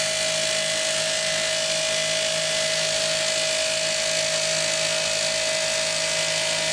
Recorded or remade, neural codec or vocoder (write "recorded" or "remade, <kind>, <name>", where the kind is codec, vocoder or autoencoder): recorded